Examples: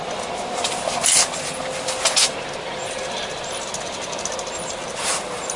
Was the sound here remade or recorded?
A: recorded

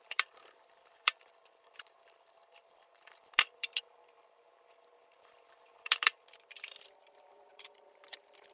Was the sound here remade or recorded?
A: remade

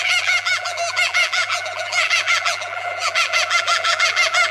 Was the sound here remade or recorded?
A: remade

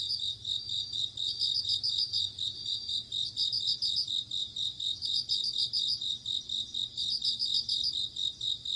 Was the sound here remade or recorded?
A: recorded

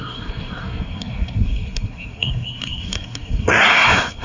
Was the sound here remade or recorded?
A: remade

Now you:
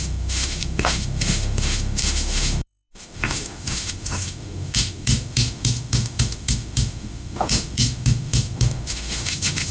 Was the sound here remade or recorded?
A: remade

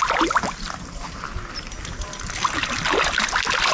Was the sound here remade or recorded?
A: recorded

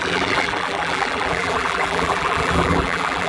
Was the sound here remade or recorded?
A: remade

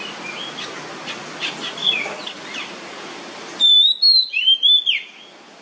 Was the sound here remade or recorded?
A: recorded